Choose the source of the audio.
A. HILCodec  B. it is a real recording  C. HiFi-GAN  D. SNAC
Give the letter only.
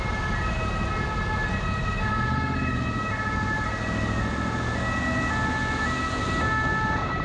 B